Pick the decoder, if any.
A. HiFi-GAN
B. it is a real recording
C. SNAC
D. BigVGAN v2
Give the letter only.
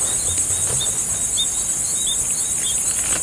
B